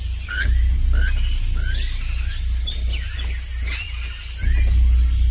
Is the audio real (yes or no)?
yes